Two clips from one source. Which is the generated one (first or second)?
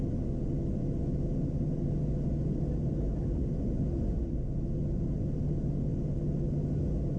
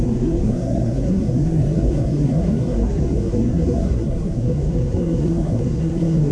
second